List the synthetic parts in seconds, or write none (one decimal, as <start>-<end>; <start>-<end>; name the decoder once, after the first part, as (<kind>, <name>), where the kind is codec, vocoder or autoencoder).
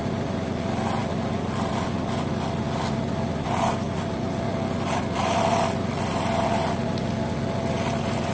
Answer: none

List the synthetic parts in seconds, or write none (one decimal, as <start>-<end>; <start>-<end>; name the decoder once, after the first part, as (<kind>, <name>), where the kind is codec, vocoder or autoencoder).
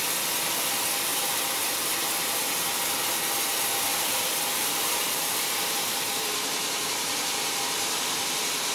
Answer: 1.1-1.7 (vocoder, BigVGAN v2); 3.9-7.6